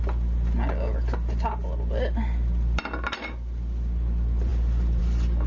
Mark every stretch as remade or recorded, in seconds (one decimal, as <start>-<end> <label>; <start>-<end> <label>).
0.0-5.5 recorded